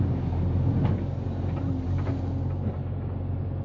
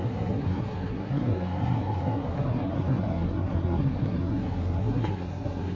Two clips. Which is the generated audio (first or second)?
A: second